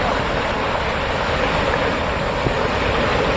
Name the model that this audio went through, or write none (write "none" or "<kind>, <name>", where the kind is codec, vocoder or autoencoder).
none